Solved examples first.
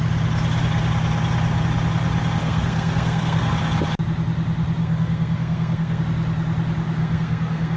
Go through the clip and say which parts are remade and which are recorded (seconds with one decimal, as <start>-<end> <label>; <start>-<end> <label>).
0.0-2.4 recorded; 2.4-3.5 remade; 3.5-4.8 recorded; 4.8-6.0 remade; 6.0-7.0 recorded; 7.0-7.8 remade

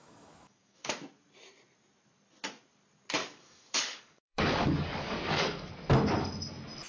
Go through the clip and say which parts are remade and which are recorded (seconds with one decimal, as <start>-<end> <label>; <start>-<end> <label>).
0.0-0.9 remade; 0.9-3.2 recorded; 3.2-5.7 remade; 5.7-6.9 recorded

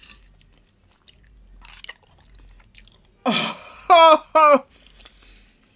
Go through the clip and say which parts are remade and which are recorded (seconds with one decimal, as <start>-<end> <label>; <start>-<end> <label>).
0.0-5.8 recorded

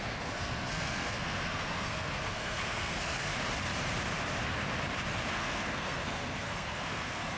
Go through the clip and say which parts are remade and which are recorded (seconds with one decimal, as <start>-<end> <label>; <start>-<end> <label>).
0.0-3.3 remade; 3.3-5.3 recorded; 5.3-7.4 remade

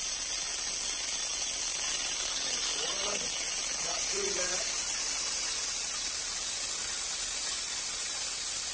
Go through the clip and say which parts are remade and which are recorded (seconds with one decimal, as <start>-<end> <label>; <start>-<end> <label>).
0.0-8.7 recorded

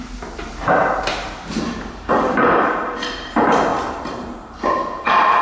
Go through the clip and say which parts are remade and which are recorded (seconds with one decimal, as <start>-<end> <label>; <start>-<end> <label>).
0.0-0.8 recorded; 0.8-2.8 remade; 2.8-5.4 recorded

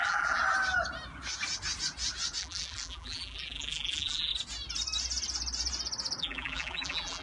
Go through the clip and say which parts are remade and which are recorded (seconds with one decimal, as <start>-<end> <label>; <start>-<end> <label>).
0.0-0.4 remade; 0.4-2.4 recorded; 2.4-4.3 remade; 4.3-6.2 recorded; 6.2-7.2 remade

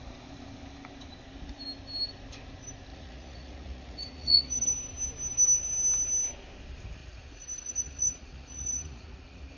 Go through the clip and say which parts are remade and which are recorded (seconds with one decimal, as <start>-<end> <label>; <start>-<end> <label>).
0.0-2.9 recorded; 2.9-4.7 remade; 4.7-7.0 recorded; 7.0-9.6 remade